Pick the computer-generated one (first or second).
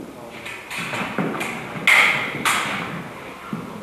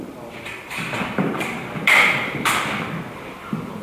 second